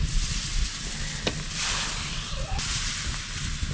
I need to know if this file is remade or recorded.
remade